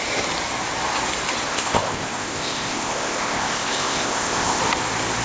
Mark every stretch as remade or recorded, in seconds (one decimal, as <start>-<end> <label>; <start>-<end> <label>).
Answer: 0.0-1.5 recorded; 1.5-4.6 remade; 4.6-5.2 recorded